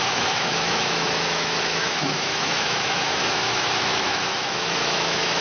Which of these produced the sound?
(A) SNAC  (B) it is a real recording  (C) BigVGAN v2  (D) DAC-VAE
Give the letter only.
D